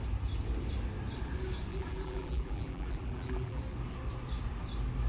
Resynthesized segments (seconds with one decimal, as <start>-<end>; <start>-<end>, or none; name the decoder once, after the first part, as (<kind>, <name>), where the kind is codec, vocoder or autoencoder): 1.7-3.6 (vocoder, BigVGAN v2)